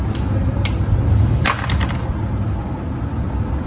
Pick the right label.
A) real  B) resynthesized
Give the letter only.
A